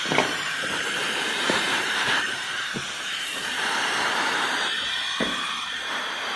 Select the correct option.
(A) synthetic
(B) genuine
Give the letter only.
A